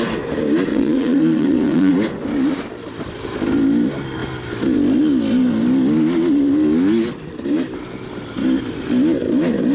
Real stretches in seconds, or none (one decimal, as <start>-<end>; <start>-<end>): 0.0-0.7; 1.9-9.7